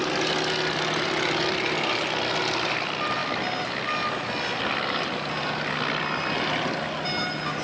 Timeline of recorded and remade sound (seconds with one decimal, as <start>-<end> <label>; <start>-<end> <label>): 0.0-7.6 recorded